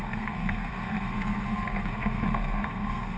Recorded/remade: remade